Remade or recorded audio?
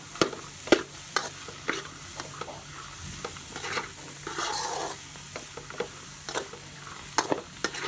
recorded